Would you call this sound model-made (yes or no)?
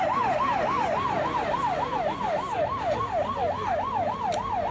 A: no